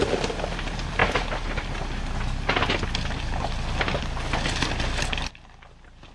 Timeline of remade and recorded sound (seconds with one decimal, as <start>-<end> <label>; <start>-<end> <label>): 0.0-6.1 recorded